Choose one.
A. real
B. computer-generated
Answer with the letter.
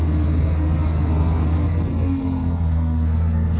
B